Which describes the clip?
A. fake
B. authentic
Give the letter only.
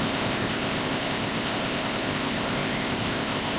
A